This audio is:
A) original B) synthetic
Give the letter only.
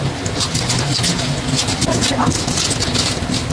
A